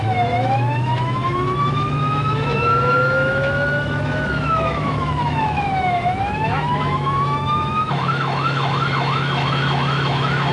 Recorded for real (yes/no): no